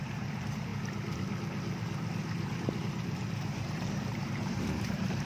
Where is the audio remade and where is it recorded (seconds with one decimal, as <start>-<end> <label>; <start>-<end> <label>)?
0.0-0.7 remade; 0.7-2.8 recorded; 2.8-5.3 remade